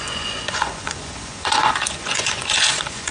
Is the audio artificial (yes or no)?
yes